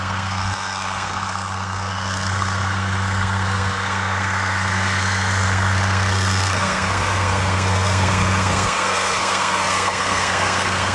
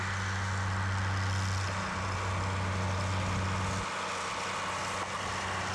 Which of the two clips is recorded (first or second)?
second